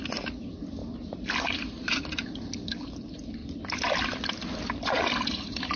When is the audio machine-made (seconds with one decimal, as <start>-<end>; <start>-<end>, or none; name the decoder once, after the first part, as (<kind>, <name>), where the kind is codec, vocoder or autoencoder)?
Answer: 0.8-2.1 (vocoder, BigVGAN v2)